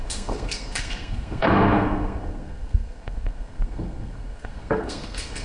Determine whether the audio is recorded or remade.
remade